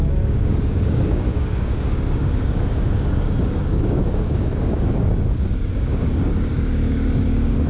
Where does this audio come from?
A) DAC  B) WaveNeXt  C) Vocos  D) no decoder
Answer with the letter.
A